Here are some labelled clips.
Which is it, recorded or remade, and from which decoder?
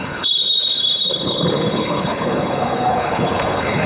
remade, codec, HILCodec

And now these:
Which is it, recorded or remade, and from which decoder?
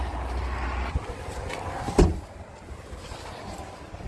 recorded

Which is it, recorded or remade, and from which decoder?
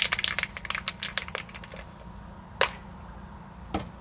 recorded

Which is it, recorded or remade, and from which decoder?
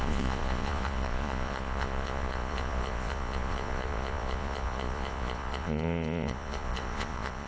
remade, vocoder, Vocos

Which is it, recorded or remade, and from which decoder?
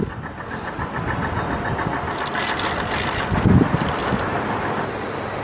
recorded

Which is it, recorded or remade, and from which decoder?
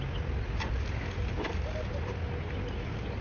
recorded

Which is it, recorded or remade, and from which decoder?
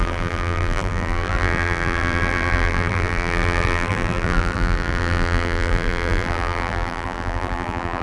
remade, vocoder, BigVGAN v2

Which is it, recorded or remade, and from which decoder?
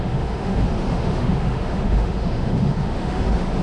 remade, autoencoder, DAC-VAE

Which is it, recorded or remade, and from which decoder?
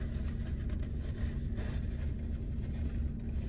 recorded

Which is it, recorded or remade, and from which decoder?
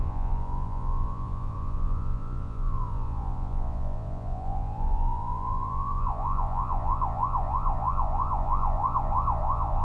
remade, vocoder, Vocos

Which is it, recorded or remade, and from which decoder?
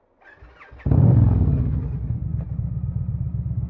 recorded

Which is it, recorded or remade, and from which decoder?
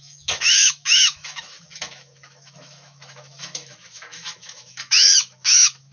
remade, autoencoder, DAC-VAE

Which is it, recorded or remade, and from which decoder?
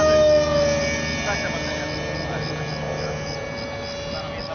recorded